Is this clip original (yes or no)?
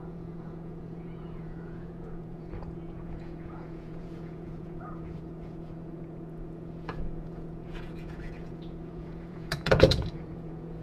no